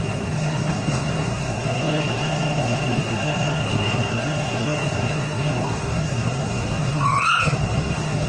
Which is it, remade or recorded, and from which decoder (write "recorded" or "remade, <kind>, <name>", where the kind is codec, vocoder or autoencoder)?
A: remade, codec, SNAC